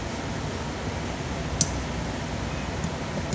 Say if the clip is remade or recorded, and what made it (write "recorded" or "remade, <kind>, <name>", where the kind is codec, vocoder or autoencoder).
recorded